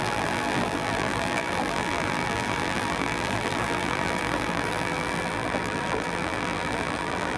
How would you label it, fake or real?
fake